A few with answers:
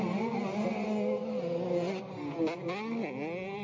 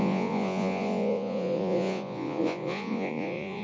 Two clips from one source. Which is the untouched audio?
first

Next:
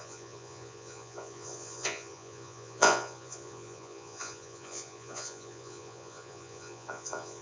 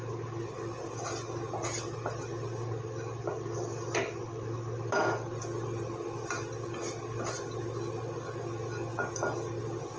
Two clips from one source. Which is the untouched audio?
second